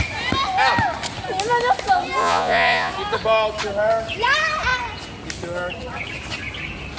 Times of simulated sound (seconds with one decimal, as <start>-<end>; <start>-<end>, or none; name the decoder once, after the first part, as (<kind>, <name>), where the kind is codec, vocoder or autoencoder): 2.2-2.9 (vocoder, Vocos)